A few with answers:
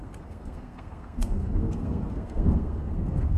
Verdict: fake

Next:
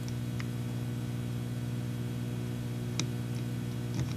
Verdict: real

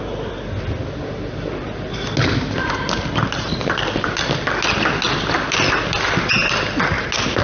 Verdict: real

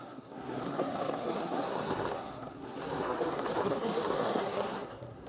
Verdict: fake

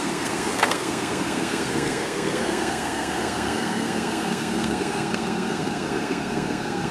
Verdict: fake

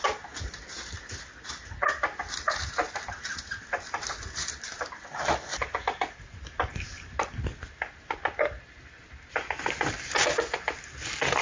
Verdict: real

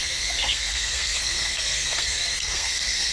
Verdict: fake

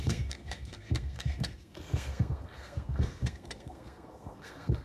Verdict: fake